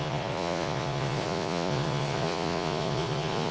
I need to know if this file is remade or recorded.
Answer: remade